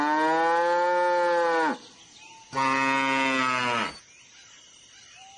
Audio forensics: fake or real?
real